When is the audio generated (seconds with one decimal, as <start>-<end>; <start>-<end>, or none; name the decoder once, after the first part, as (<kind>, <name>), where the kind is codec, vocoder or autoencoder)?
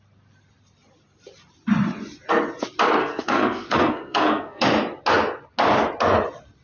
3.0-4.6 (codec, SNAC)